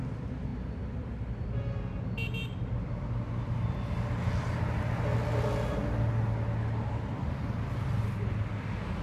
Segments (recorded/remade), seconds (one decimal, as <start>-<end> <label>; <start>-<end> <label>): 0.0-9.0 recorded